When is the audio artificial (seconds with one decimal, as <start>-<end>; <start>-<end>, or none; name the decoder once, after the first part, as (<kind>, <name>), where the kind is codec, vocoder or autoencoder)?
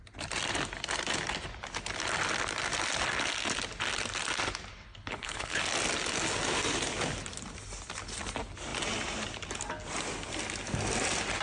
4.7-5.6 (codec, HILCodec)